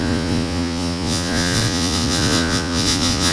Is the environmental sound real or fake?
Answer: fake